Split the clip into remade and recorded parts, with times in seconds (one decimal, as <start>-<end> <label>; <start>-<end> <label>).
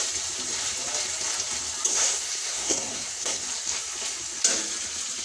0.0-1.9 recorded; 1.9-3.4 remade; 3.4-5.2 recorded